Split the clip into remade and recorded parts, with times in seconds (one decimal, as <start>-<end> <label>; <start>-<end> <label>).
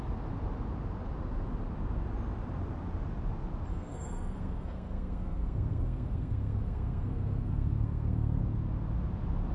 0.0-3.7 recorded; 3.7-8.4 remade; 8.4-9.5 recorded